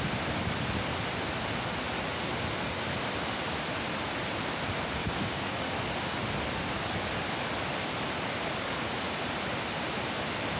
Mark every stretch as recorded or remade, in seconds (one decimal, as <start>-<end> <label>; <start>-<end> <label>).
0.0-5.0 recorded; 5.0-5.7 remade; 5.7-10.6 recorded